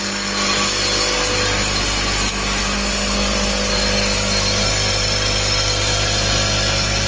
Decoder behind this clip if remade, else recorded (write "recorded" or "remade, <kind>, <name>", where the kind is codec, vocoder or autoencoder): recorded